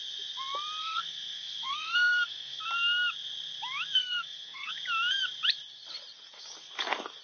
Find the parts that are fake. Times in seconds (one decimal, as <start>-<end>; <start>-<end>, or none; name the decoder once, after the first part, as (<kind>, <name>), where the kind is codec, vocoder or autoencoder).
0.8-2.6 (codec, SNAC); 4.0-4.7